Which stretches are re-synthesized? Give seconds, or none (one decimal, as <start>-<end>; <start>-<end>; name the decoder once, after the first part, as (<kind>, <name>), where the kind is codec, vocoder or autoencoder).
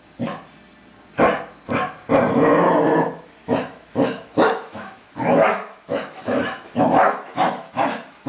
3.4-8.3 (autoencoder, DAC-VAE)